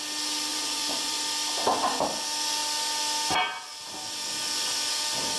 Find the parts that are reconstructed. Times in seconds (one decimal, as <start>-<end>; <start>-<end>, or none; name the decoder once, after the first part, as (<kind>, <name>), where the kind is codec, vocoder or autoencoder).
0.5-1.2 (vocoder, Vocos)